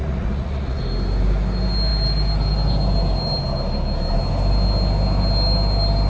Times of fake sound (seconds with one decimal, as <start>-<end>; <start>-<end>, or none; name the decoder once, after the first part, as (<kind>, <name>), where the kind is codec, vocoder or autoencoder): 0.0-0.8 (vocoder, Vocos)

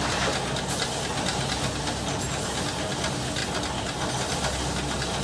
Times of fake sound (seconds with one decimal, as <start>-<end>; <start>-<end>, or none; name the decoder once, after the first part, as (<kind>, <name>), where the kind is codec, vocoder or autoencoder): none

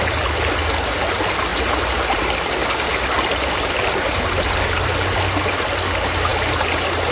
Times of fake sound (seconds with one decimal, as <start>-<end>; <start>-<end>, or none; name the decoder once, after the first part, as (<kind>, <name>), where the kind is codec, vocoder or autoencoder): 1.5-2.2 (vocoder, BigVGAN v2)